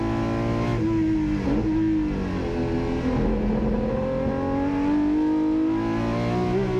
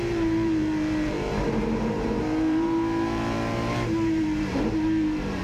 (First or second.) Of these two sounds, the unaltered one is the first